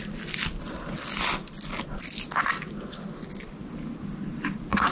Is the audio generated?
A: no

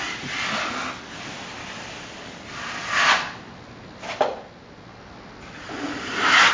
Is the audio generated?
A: no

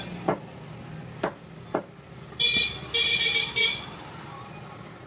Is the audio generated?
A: no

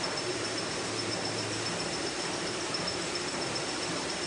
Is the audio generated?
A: yes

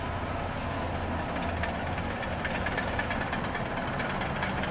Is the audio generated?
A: no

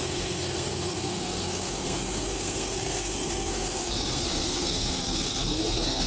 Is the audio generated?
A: yes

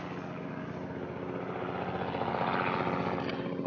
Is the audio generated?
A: no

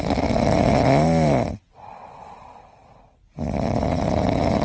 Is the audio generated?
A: no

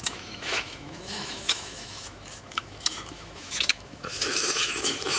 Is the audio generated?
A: yes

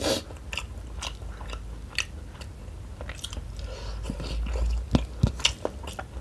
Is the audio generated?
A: no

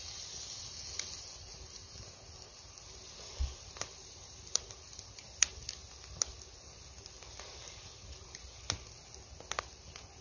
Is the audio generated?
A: no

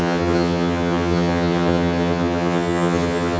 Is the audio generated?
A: yes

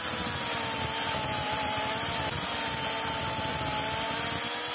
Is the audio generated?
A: no